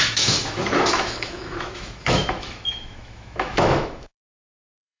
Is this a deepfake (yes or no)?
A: yes